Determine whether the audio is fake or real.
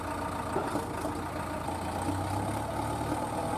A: real